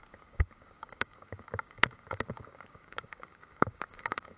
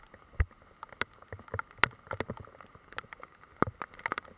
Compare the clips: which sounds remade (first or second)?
first